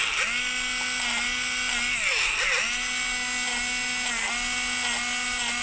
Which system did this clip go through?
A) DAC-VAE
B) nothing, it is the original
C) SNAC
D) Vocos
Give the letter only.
B